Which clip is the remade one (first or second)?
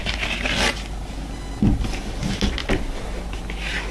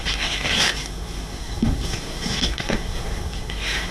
second